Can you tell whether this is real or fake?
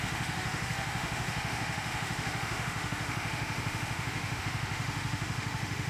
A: fake